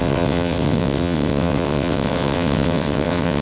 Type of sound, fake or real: fake